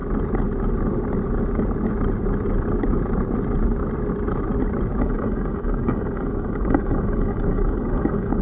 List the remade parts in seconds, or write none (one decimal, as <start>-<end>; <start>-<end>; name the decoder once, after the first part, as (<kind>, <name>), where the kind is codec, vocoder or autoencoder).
5.0-8.4 (codec, DAC)